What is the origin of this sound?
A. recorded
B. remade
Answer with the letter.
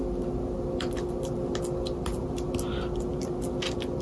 A